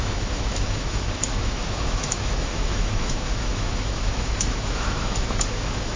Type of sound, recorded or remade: remade